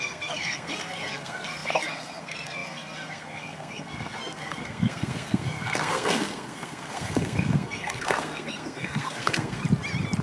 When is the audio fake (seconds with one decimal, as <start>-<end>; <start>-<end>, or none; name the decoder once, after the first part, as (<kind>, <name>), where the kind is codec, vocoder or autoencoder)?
0.0-9.6 (codec, SNAC)